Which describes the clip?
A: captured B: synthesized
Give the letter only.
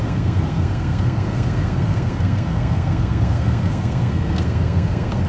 B